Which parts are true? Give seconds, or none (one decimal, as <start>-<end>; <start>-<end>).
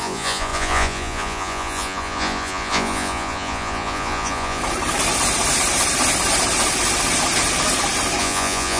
4.6-8.2